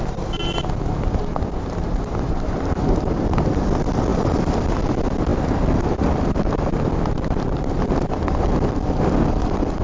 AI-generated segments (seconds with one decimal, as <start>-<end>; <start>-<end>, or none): 4.1-4.6; 5.3-8.4